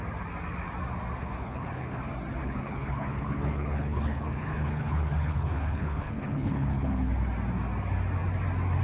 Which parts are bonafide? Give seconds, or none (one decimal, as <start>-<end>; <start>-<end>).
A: 0.0-1.2; 2.0-2.4; 7.1-8.8